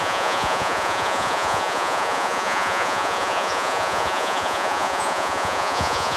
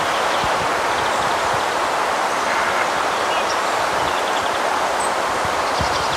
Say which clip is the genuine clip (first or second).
second